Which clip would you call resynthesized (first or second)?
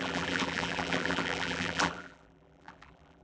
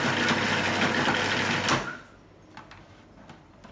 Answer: first